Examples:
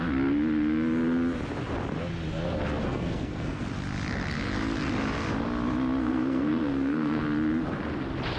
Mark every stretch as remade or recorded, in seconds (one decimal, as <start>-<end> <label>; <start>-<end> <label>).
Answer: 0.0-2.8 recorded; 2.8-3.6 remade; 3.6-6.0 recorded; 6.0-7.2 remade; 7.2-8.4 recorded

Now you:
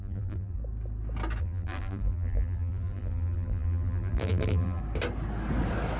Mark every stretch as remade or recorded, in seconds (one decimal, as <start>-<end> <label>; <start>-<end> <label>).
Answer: 0.0-0.6 remade; 0.6-1.4 recorded; 1.4-4.8 remade; 4.8-6.0 recorded

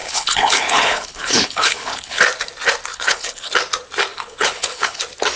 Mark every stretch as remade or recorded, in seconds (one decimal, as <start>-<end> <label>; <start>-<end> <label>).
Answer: 0.0-2.2 remade; 2.2-2.9 recorded; 2.9-3.5 remade; 3.5-4.1 recorded; 4.1-5.0 remade; 5.0-5.4 recorded

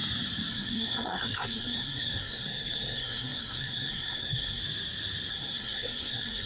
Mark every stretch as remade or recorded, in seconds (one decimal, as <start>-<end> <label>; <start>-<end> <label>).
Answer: 0.0-0.5 recorded; 0.5-4.6 remade; 4.6-5.3 recorded; 5.3-6.5 remade

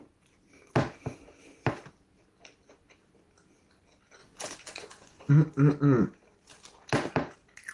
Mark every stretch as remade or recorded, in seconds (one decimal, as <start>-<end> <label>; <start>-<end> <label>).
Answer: 0.0-4.2 recorded; 4.2-5.3 remade; 5.3-7.7 recorded

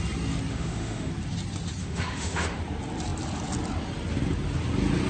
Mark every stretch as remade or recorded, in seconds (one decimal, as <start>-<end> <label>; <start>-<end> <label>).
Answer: 0.0-0.5 recorded; 0.5-1.1 remade; 1.1-1.8 recorded; 1.8-2.6 remade; 2.6-5.1 recorded

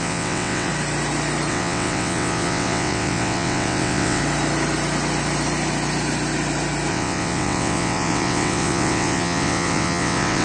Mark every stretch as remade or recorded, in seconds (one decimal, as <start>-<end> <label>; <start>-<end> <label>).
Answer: 0.0-0.7 remade; 0.7-1.5 recorded; 1.5-4.2 remade; 4.2-6.9 recorded; 6.9-10.4 remade

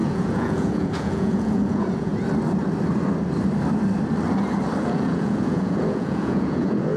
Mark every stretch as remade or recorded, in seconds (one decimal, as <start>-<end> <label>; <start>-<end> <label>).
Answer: 0.0-2.1 remade; 2.1-4.8 recorded; 4.8-7.0 remade